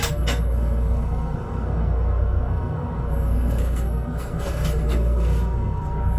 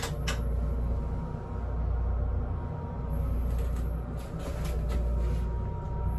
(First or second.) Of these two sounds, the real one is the second